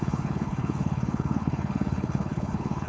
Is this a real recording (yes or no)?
no